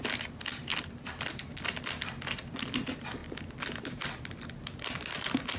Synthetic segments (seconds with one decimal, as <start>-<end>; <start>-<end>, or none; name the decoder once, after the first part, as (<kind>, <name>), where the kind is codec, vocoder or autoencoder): 0.7-1.6 (vocoder, BigVGAN v2); 3.2-5.6